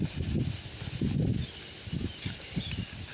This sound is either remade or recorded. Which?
recorded